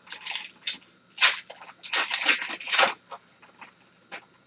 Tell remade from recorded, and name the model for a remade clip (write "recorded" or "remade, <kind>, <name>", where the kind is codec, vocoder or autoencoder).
recorded